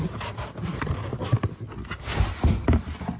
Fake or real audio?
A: real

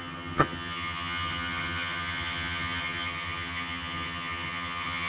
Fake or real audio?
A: fake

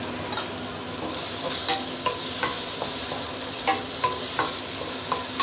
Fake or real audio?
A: real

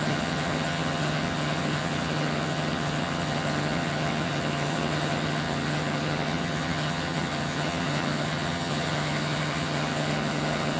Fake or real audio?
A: fake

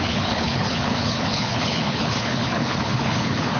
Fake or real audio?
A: fake